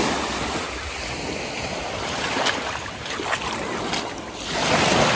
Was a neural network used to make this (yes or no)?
no